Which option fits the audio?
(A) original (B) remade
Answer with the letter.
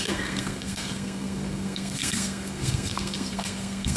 B